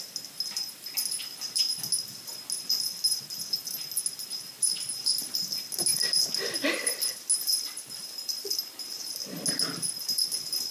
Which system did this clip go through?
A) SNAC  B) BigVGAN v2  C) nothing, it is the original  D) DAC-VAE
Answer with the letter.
C